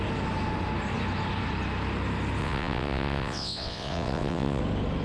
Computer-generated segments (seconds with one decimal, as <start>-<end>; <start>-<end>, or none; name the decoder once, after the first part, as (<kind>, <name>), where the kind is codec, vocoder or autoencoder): 2.4-4.6 (vocoder, WaveNeXt)